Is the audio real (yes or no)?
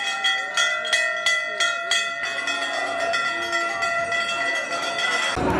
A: yes